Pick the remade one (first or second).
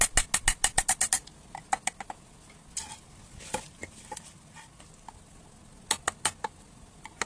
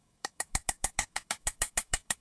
second